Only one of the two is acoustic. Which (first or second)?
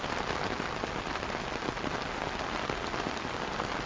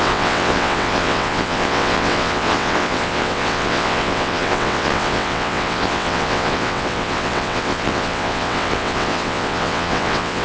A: first